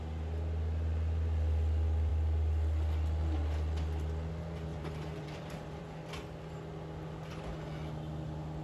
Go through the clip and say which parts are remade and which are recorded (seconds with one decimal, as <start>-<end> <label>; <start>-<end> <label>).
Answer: 0.0-4.7 recorded; 4.7-5.8 remade; 5.8-8.6 recorded